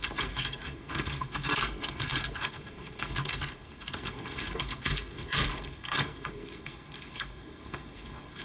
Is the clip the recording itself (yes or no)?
no